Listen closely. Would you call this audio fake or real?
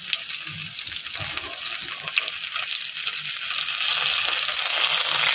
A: real